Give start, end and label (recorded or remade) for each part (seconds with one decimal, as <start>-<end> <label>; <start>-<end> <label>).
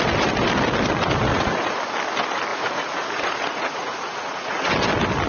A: 0.0-1.3 recorded; 1.3-1.8 remade; 1.8-2.5 recorded; 2.5-4.7 remade; 4.7-5.3 recorded